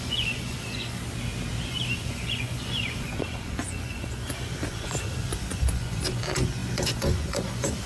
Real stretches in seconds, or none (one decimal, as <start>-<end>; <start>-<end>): 1.0-1.7